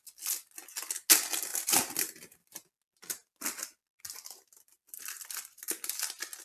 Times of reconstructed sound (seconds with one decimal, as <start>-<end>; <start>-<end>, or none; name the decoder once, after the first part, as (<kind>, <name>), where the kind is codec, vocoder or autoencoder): none